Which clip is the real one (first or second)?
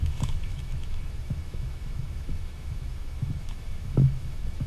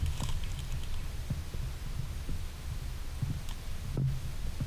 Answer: second